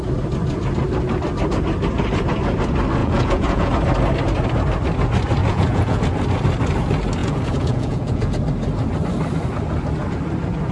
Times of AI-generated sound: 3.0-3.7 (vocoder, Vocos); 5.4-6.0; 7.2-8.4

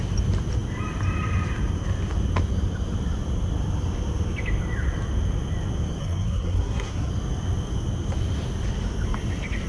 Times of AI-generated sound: 6.0-7.1 (codec, SNAC)

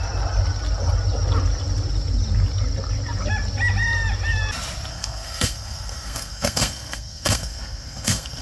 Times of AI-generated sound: 4.9-8.4 (codec, SNAC)

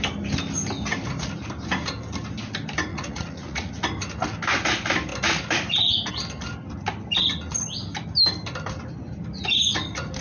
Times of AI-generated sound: 2.9-3.7 (vocoder, Vocos)

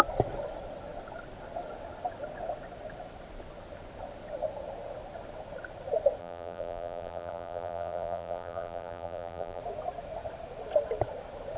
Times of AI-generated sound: 6.2-9.6 (vocoder, BigVGAN v2)

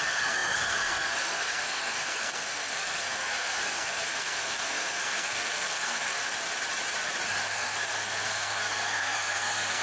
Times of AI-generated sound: 0.0-6.3 (codec, SNAC); 7.4-9.8

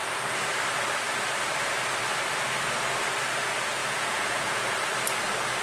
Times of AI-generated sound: 3.8-4.9 (vocoder, Vocos)